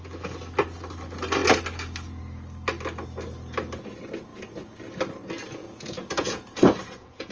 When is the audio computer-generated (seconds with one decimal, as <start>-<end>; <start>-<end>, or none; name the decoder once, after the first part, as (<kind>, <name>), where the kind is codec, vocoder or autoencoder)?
5.6-7.3 (vocoder, Vocos)